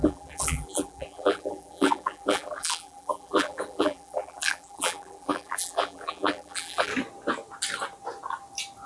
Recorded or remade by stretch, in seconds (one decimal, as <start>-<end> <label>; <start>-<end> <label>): 0.0-6.9 remade; 6.9-8.9 recorded